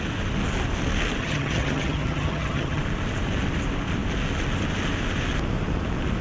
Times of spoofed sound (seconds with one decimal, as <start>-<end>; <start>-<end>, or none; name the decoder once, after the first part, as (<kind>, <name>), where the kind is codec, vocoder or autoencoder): 1.2-2.8 (vocoder, HiFi-GAN)